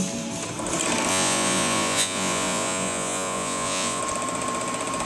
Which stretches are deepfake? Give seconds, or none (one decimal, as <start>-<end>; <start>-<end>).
1.1-4.0

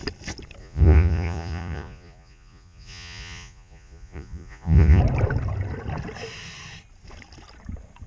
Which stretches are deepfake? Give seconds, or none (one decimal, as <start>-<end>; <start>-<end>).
0.6-5.0

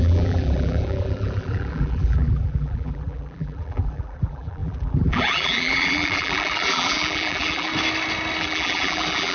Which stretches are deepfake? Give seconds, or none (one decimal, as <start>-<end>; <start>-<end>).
0.0-7.7; 8.4-9.3

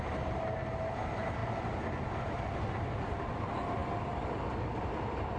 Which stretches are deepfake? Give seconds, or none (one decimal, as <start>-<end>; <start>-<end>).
none

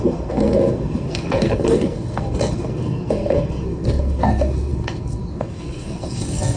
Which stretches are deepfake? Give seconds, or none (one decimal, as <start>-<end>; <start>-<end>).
0.0-6.6

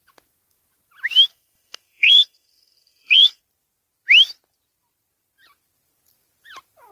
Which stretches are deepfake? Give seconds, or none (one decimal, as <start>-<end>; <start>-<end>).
1.3-3.4

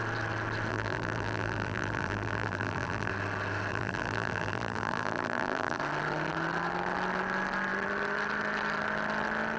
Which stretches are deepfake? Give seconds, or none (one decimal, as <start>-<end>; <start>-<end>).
0.7-3.1; 3.7-5.8

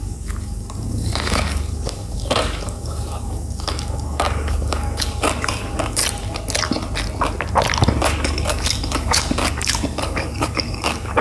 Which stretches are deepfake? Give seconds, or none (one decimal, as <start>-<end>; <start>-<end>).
0.0-6.0; 8.0-11.2